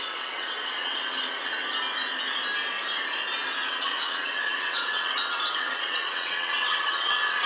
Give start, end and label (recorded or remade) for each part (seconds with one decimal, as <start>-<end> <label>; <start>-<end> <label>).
0.0-1.5 remade; 1.5-3.7 recorded; 3.7-7.5 remade